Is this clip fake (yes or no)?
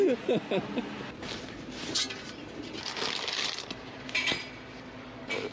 no